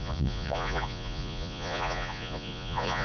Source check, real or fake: fake